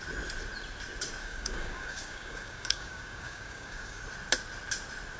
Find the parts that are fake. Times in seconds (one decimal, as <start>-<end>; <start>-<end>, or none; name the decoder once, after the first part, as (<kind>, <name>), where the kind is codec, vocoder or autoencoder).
1.2-4.0 (codec, DAC)